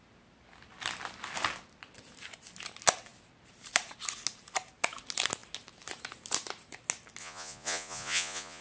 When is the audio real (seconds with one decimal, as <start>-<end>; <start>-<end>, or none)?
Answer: 0.0-7.2